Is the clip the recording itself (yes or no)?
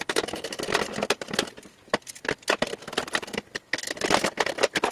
yes